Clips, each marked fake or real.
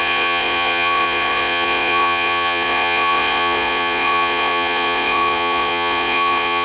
fake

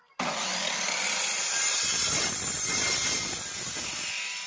real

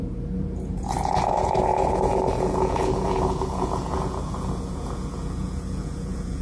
fake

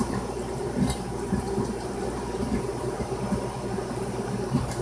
fake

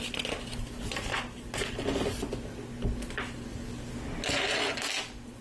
real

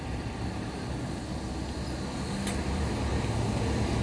real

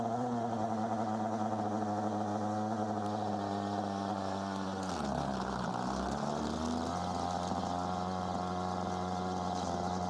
real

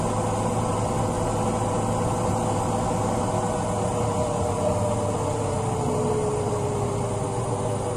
real